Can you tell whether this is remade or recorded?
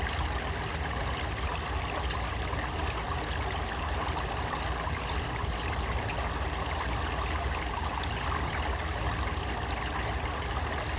recorded